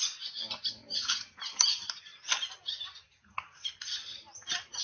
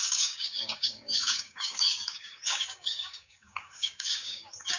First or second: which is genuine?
first